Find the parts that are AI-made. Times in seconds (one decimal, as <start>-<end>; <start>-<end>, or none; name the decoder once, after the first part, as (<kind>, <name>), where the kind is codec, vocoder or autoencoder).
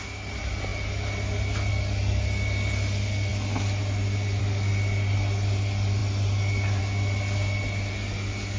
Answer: none